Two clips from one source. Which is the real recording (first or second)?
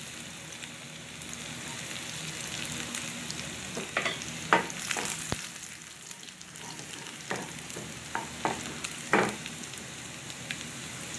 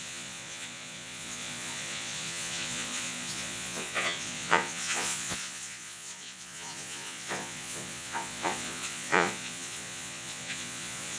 first